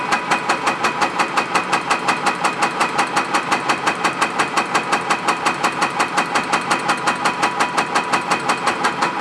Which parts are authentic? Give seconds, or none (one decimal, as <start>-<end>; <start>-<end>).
0.0-9.2